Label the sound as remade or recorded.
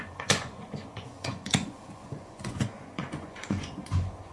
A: remade